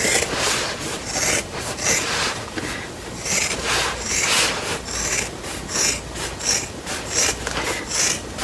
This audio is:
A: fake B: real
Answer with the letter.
B